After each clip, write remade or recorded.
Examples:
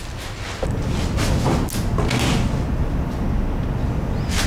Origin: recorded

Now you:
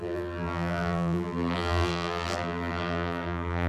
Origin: remade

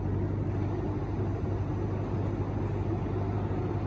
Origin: recorded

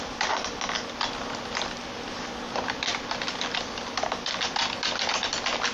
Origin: recorded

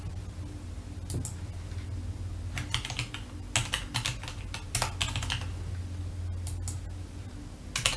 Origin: recorded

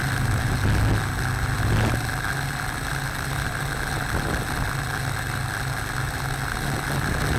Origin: recorded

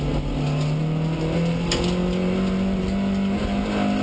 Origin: recorded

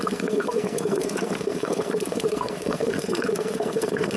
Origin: remade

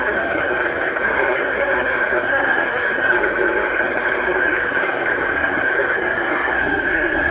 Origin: remade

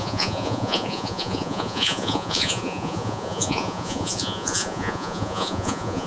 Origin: remade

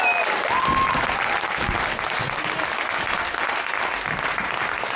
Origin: recorded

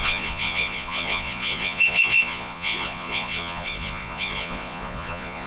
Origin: remade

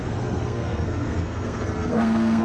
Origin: remade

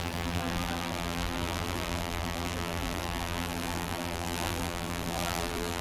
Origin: remade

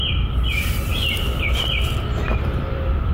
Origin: remade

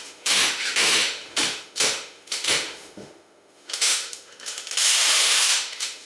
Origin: remade